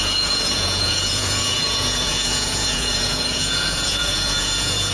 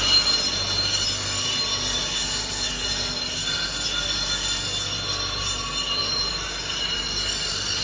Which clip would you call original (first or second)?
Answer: second